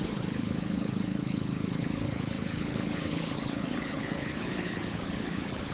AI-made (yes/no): yes